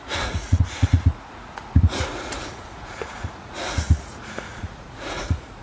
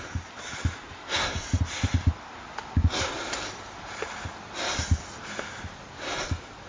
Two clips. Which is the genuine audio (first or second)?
second